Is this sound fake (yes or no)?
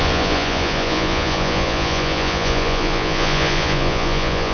yes